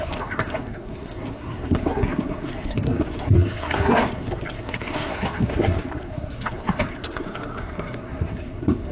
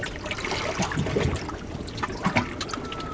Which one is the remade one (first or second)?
first